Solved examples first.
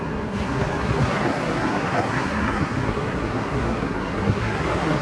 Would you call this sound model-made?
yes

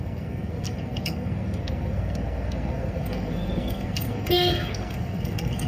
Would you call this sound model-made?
yes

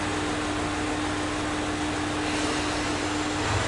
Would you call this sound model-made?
no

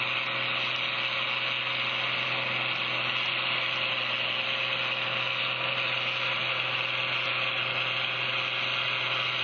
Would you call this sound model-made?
no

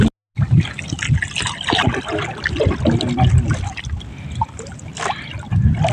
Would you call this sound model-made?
no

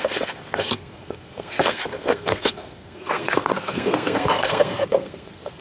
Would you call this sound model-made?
yes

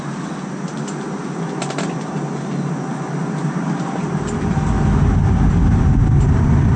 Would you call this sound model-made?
no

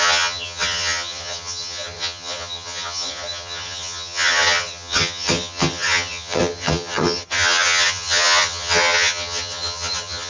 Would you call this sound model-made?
yes